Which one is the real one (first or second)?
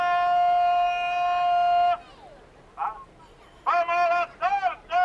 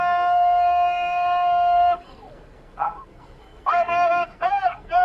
first